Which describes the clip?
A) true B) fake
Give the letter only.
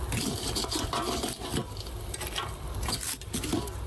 A